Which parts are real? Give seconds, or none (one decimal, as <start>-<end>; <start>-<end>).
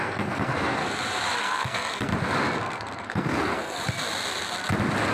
0.8-1.4; 2.1-2.6; 3.8-5.1